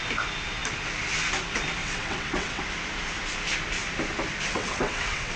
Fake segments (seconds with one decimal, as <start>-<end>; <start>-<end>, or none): 1.8-2.6; 4.5-5.4